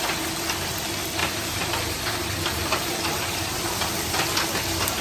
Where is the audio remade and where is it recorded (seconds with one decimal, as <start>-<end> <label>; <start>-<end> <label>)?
0.0-1.2 recorded; 1.2-4.1 remade; 4.1-5.0 recorded